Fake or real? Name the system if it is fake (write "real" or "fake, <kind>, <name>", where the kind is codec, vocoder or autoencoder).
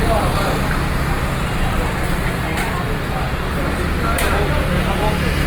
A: real